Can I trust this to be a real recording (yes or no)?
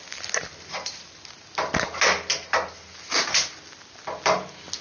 yes